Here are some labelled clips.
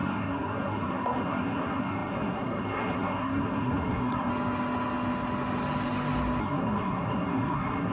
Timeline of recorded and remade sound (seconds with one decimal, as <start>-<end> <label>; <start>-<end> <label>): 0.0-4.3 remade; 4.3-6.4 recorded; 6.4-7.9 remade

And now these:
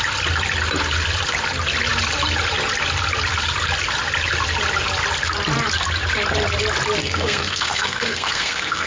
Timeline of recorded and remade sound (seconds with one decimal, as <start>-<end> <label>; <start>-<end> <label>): 0.0-7.0 recorded; 7.0-8.9 remade

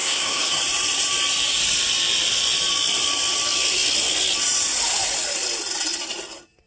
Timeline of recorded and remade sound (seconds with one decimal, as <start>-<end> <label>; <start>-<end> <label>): 0.0-0.6 remade; 0.6-6.7 recorded